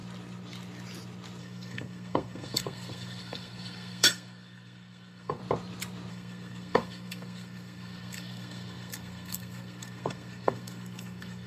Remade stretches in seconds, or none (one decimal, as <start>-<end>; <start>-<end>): 1.4-5.4; 6.1-11.5